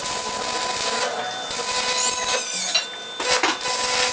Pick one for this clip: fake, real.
real